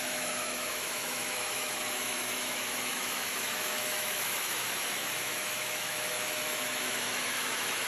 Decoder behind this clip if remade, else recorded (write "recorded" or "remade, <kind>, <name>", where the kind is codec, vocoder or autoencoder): remade, autoencoder, DAC-VAE